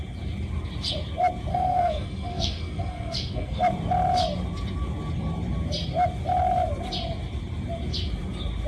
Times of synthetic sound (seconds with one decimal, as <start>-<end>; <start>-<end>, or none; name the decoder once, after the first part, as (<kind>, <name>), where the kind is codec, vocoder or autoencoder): 1.5-3.6 (codec, SNAC)